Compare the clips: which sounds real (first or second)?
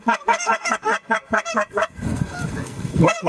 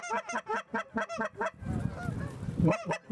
second